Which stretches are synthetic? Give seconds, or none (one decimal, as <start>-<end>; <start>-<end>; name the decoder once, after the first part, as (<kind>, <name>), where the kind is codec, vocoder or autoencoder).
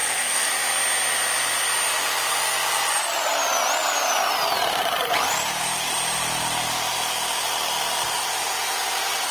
0.0-0.5 (codec, SNAC)